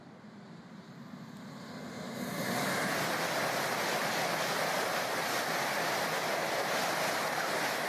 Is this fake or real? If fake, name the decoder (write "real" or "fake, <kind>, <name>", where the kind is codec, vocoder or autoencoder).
real